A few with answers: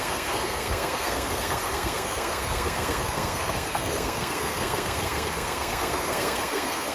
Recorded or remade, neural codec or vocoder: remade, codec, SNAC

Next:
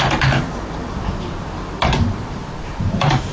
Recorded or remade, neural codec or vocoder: remade, vocoder, BigVGAN v2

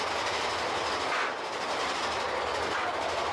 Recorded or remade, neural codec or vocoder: recorded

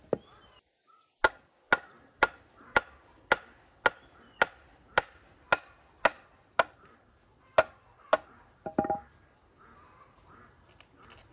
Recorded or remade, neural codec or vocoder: recorded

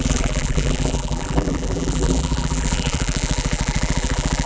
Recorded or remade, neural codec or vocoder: remade, vocoder, BigVGAN v2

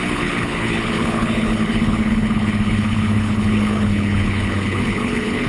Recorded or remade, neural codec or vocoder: remade, codec, HILCodec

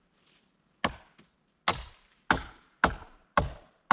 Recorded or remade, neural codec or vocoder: recorded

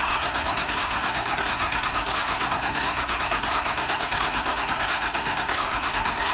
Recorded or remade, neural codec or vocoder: remade, codec, SNAC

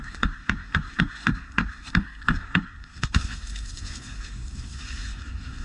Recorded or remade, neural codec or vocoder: remade, codec, SNAC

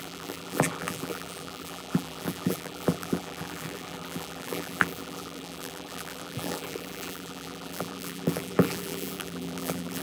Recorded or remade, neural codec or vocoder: remade, vocoder, BigVGAN v2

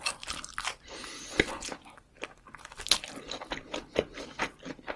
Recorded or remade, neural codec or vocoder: recorded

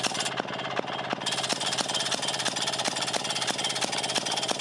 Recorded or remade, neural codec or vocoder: recorded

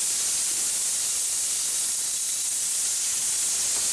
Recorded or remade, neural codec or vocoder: recorded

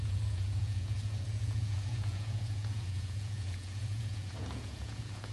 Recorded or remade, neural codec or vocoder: remade, vocoder, Vocos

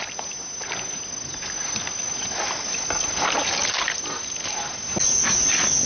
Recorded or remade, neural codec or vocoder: recorded